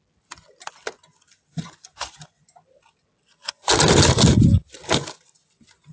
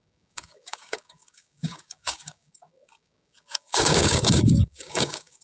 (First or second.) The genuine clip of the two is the first